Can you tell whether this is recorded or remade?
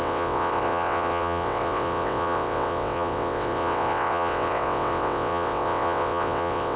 remade